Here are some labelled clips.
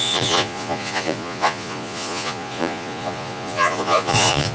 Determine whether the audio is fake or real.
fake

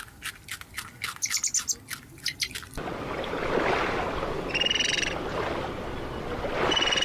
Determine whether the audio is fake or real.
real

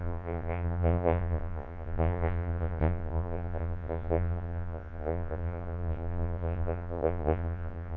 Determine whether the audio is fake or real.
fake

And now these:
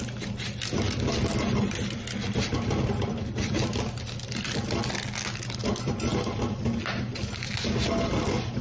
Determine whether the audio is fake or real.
real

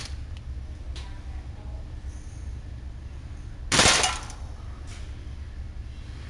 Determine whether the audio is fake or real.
real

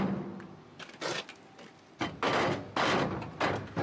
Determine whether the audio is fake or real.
real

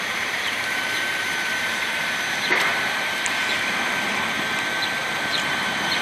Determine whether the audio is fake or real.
fake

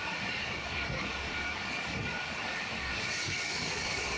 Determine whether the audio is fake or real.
fake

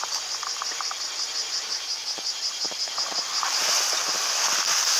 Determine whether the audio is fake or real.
real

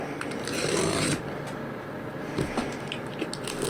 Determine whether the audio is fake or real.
real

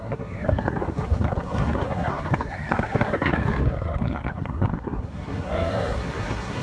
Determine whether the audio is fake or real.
fake